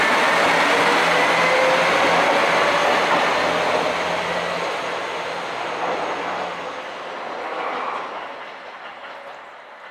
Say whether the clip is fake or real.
real